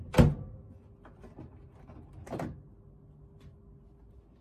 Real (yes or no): yes